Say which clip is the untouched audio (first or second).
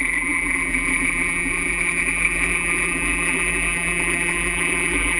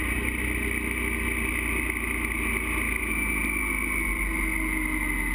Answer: second